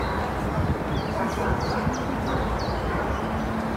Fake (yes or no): no